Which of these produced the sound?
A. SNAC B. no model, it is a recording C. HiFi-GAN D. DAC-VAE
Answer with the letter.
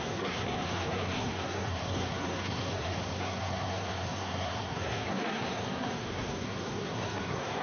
A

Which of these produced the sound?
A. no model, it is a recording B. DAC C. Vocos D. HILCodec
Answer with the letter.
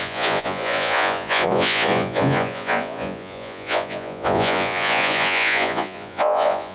C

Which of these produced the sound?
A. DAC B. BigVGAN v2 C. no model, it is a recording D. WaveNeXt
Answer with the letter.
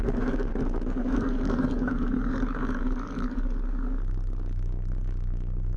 A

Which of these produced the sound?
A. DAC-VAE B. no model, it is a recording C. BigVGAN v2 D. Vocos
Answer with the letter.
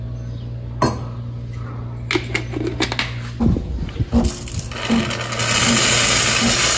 B